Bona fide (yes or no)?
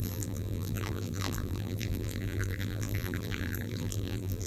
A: no